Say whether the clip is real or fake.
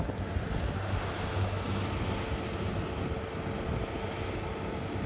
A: real